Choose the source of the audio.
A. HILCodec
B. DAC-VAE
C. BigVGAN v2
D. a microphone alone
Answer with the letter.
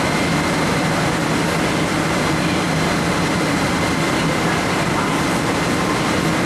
D